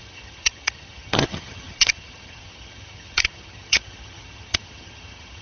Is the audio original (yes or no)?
no